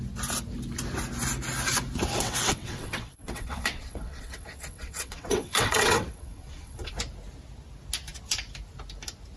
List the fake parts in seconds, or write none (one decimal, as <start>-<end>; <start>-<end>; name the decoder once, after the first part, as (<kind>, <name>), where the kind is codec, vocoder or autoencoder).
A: 2.1-6.9 (vocoder, WaveNeXt)